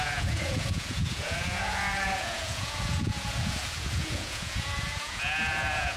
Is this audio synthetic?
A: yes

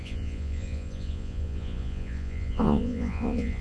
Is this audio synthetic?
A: yes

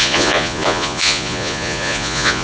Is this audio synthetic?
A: yes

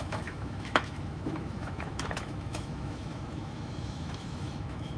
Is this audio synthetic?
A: yes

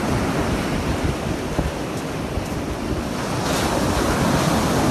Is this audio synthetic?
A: no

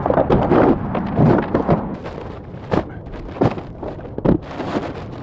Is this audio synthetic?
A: no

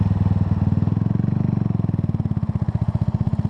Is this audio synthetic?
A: no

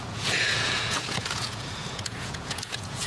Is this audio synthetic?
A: yes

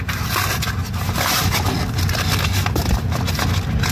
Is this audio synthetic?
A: no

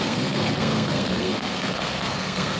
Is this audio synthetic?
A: yes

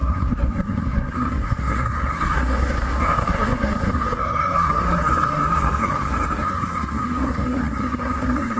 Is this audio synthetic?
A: yes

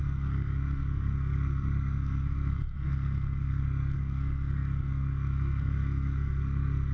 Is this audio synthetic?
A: yes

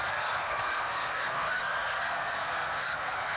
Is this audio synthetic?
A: yes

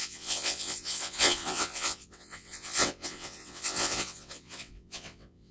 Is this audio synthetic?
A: yes